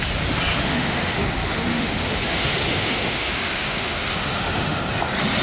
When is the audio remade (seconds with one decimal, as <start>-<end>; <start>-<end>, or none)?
0.5-1.2; 1.7-4.9